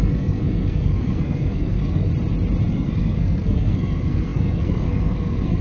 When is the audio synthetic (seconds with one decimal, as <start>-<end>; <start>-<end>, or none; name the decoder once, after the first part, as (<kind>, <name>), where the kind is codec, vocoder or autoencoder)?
0.0-2.1 (codec, SNAC); 2.7-5.6